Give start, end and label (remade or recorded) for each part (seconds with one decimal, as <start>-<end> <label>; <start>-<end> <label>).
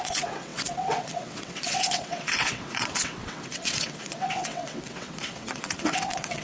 0.0-6.4 remade